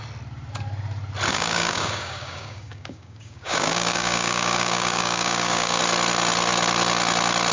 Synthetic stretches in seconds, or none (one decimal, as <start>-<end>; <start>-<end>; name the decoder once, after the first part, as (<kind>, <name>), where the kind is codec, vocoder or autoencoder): 1.3-5.8 (codec, DAC)